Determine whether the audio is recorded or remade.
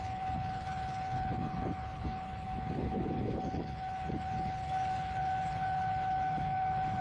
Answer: remade